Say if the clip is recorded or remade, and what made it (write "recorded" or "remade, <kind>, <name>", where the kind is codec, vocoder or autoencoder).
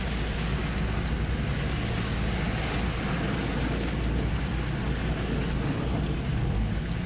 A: recorded